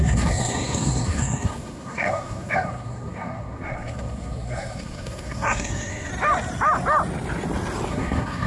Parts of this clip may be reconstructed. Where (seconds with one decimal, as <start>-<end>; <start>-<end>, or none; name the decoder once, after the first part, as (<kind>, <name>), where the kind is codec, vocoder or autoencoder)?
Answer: 0.0-6.1 (codec, SNAC); 7.9-8.5